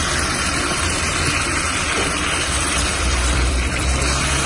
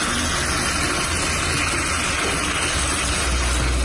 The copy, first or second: first